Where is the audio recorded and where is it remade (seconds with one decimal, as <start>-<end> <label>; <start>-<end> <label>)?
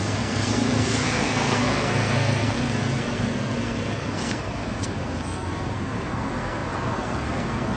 0.0-7.8 remade